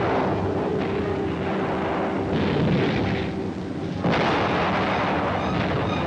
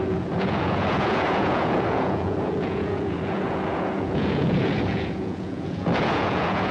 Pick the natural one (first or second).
first